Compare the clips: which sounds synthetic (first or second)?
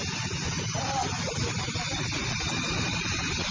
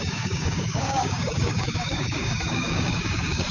second